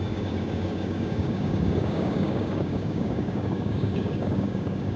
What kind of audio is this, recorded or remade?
remade